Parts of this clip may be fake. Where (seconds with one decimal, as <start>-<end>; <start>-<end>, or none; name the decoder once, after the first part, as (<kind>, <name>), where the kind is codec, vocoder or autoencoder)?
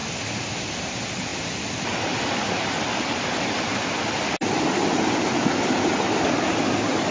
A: none